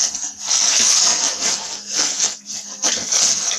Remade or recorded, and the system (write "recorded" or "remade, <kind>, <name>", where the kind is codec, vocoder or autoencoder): remade, codec, SNAC